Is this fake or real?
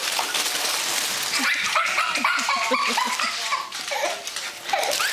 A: real